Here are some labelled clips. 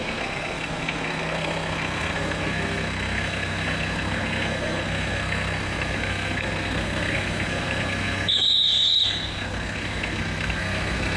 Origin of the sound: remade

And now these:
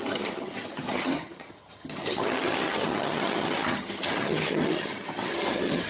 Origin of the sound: remade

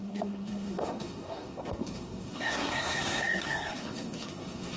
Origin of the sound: remade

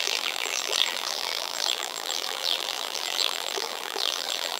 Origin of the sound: remade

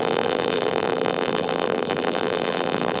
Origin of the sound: remade